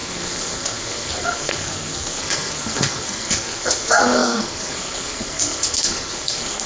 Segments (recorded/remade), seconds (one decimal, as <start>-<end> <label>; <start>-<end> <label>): 0.0-6.7 remade